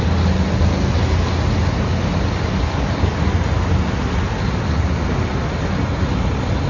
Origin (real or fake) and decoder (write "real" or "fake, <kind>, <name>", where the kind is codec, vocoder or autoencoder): real